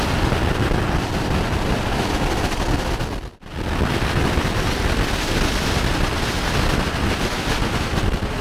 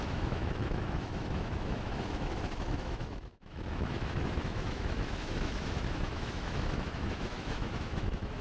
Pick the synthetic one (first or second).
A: second